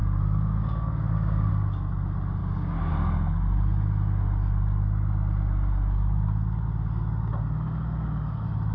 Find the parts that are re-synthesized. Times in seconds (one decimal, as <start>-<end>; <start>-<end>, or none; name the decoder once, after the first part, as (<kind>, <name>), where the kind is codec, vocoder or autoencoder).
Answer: 0.0-1.5 (codec, DAC); 2.4-2.9